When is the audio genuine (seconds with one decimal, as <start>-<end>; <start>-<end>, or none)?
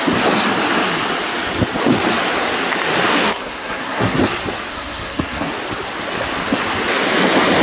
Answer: 0.0-3.1; 4.2-4.7; 5.5-7.6